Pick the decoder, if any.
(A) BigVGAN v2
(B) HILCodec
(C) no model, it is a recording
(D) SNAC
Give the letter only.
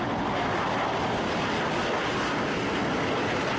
C